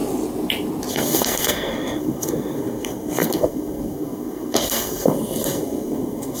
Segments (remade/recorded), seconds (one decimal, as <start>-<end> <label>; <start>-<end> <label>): 0.0-0.9 recorded; 0.9-6.4 remade